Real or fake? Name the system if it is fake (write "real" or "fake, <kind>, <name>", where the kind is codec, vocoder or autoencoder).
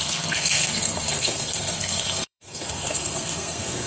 fake, codec, SNAC